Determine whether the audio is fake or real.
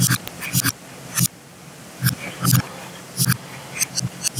real